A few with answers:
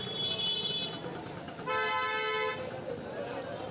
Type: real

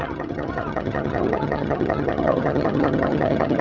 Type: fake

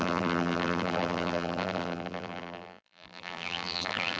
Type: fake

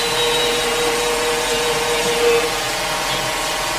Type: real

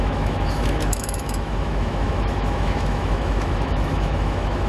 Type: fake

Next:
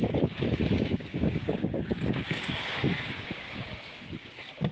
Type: fake